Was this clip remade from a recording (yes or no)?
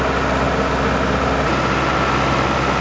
no